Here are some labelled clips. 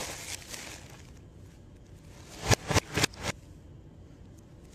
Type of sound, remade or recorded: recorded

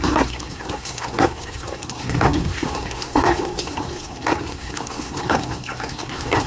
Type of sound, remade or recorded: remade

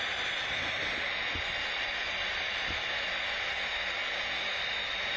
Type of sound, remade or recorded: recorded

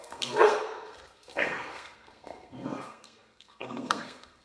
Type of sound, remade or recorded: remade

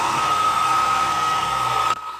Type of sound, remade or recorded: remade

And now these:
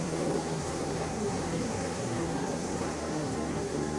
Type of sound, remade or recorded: remade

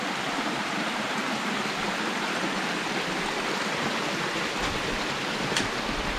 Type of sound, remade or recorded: recorded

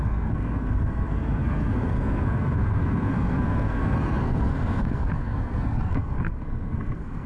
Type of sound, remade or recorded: remade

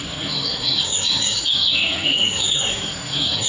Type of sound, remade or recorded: remade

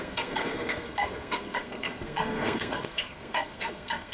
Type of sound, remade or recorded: remade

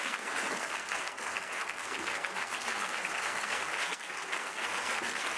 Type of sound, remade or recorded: remade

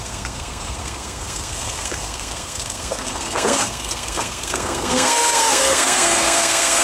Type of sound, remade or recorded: remade